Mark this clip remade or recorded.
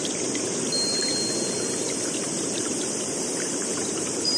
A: remade